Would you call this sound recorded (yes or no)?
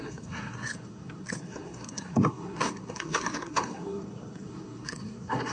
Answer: no